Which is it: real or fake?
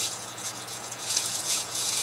fake